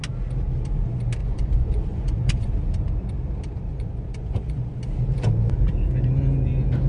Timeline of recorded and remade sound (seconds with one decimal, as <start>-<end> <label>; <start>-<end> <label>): 0.0-1.2 recorded; 1.2-2.5 remade; 2.5-3.7 recorded; 3.7-4.8 remade; 4.8-6.9 recorded